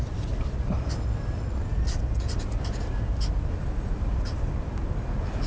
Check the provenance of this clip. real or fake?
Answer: real